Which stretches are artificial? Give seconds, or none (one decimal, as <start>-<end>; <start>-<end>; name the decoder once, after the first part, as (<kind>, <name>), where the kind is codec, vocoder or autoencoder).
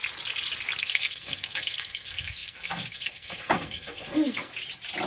0.8-4.5 (codec, SNAC)